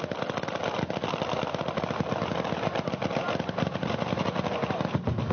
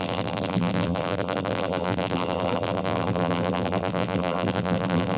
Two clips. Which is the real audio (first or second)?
first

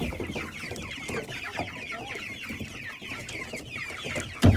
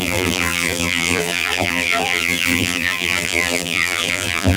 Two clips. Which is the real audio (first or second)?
first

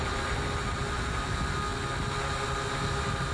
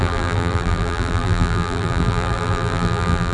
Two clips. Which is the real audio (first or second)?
first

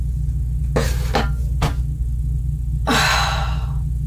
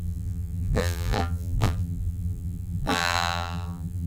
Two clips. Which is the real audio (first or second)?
first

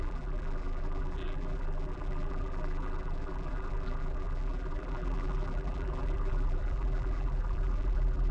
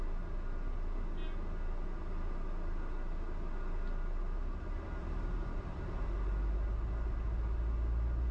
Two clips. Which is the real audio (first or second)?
second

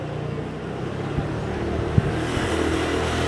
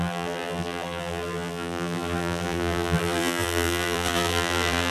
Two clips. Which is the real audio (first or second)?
first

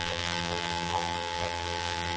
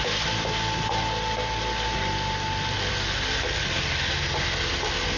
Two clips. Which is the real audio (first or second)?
second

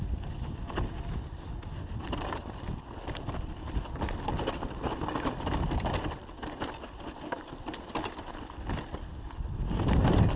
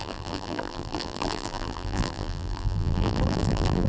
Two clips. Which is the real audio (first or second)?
first